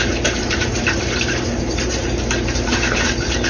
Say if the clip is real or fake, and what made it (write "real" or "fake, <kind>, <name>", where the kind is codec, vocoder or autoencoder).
fake, vocoder, BigVGAN v2